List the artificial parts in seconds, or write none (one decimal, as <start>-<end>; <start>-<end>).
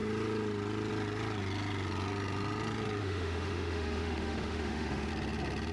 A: 3.0-5.1